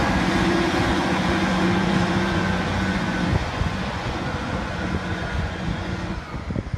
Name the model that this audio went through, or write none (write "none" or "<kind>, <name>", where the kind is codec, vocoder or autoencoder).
vocoder, Vocos